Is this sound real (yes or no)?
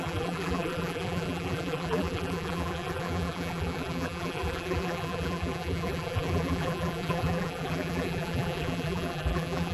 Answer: no